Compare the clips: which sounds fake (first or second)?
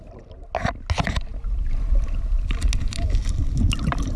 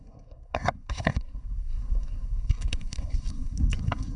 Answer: second